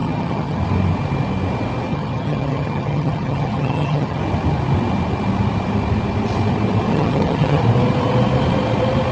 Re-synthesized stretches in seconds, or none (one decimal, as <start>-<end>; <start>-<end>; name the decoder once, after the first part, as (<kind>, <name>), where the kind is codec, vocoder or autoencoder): 0.0-0.6 (vocoder, HiFi-GAN); 1.9-4.2; 6.9-7.6